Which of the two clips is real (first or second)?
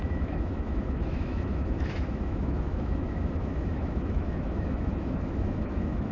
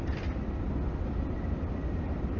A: second